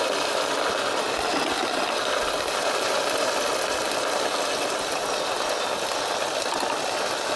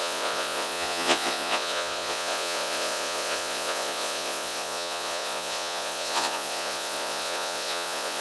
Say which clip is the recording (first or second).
first